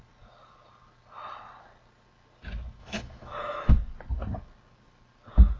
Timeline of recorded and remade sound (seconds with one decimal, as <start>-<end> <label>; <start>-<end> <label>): 0.0-2.8 recorded; 2.8-3.7 remade; 3.7-5.6 recorded

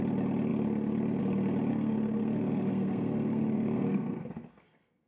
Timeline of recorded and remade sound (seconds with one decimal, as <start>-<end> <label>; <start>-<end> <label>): 0.0-1.7 recorded; 1.7-5.1 remade

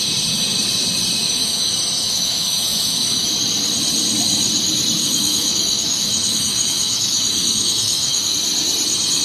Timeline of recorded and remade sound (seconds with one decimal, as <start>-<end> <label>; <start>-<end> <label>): 0.0-1.2 recorded; 1.2-3.3 remade; 3.3-5.0 recorded; 5.0-8.2 remade; 8.2-9.2 recorded

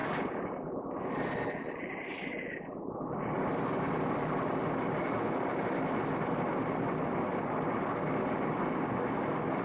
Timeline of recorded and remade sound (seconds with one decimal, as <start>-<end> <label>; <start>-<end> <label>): 0.0-9.6 recorded

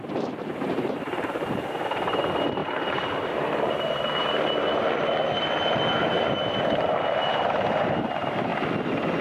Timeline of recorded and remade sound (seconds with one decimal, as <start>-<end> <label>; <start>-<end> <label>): 0.0-4.7 remade; 4.7-5.9 recorded; 5.9-8.5 remade; 8.5-9.2 recorded

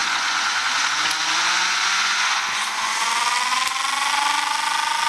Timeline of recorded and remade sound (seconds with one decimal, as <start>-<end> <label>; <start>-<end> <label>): 0.0-3.1 remade; 3.1-5.1 recorded